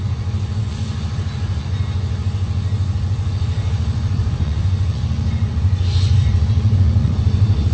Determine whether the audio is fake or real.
fake